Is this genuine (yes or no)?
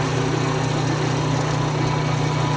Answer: yes